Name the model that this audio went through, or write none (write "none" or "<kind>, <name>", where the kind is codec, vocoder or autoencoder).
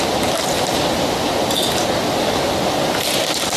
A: none